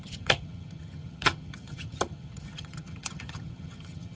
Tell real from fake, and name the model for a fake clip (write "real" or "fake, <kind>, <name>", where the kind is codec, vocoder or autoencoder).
fake, vocoder, HiFi-GAN